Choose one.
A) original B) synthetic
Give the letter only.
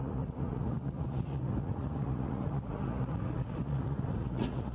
B